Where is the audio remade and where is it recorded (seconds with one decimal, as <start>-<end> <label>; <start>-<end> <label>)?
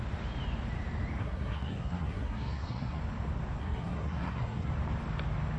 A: 0.0-1.2 recorded; 1.2-3.0 remade; 3.0-3.6 recorded; 3.6-4.7 remade; 4.7-5.6 recorded